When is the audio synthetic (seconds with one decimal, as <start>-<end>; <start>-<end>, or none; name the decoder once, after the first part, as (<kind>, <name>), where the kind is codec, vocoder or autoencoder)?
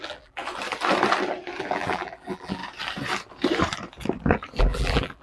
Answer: 0.0-0.4 (vocoder, BigVGAN v2); 1.6-2.6; 4.6-5.2